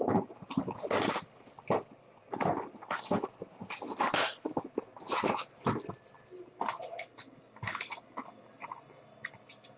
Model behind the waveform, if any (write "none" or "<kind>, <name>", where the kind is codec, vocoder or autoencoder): none